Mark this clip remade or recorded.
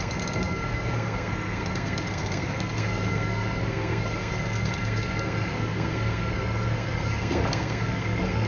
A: remade